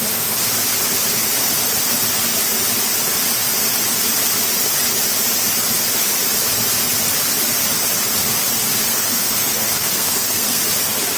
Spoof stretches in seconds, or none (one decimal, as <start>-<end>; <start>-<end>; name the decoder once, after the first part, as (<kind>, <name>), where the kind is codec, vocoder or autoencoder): 8.9-10.6 (codec, SNAC)